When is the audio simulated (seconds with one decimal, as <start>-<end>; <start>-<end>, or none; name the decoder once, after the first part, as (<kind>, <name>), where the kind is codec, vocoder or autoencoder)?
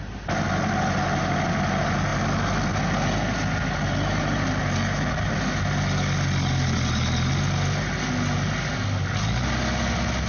none